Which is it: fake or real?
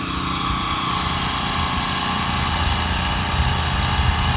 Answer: real